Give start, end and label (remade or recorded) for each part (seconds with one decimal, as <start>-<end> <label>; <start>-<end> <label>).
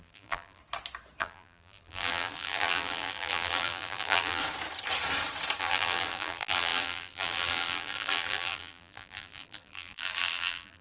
0.0-0.6 remade; 0.6-1.2 recorded; 1.2-4.4 remade; 4.4-5.6 recorded; 5.6-10.8 remade